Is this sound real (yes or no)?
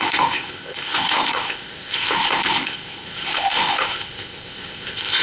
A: no